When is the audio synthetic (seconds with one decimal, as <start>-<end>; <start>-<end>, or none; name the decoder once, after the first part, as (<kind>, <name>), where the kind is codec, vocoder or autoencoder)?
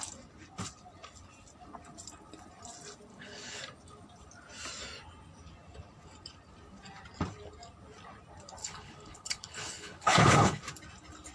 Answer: 3.1-3.6 (codec, HILCodec); 8.6-10.6